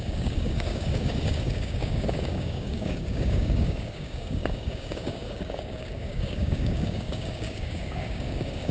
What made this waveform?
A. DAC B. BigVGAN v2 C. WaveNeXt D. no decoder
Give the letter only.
A